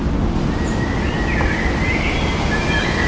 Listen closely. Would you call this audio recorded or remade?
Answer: recorded